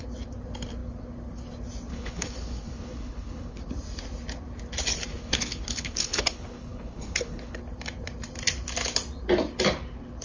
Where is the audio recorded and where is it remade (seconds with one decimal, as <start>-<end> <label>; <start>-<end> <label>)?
0.0-1.9 recorded; 1.9-3.6 remade; 3.6-5.1 recorded; 5.1-7.6 remade; 7.6-10.2 recorded